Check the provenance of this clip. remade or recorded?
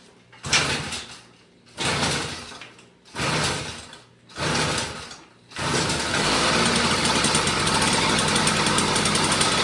recorded